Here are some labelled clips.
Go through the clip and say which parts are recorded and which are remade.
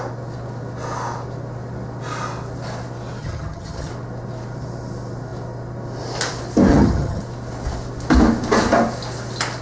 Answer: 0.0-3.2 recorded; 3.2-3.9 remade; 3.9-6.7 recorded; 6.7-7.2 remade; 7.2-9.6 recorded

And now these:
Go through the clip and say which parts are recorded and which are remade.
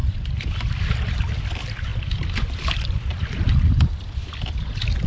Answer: 0.0-5.1 recorded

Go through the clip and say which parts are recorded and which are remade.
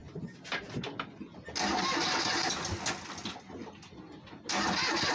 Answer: 0.0-5.1 recorded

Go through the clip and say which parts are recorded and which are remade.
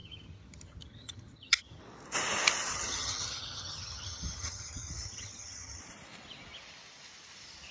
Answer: 0.0-1.8 remade; 1.8-2.7 recorded; 2.7-5.8 remade; 5.8-7.7 recorded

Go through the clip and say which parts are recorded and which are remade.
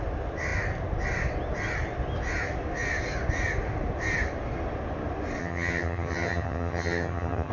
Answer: 0.0-5.4 recorded; 5.4-7.5 remade